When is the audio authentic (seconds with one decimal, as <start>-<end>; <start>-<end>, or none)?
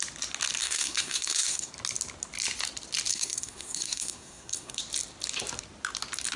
0.0-0.6; 1.7-3.1; 4.8-6.4